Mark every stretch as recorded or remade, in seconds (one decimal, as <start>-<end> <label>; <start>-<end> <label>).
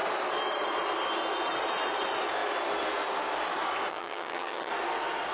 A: 0.0-3.9 recorded; 3.9-4.7 remade; 4.7-5.3 recorded